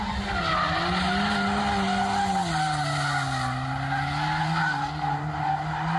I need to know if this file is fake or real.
real